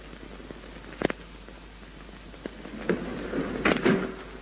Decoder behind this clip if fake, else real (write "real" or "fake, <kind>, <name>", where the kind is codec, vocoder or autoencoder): real